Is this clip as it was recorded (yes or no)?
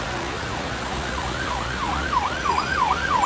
no